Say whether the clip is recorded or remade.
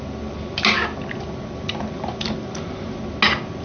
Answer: recorded